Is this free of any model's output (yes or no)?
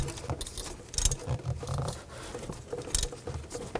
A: yes